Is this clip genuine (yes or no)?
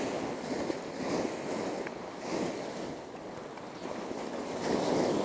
yes